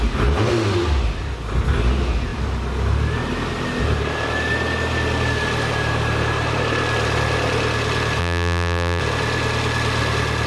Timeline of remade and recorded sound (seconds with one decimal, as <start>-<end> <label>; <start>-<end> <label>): 0.0-8.2 recorded; 8.2-9.0 remade; 9.0-10.5 recorded